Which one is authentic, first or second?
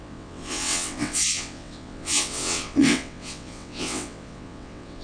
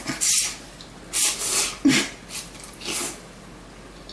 second